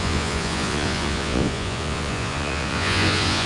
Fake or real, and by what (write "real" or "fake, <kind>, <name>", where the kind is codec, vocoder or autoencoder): fake, vocoder, Vocos